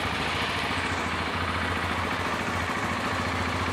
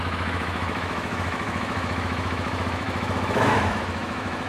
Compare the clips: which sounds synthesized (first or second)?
second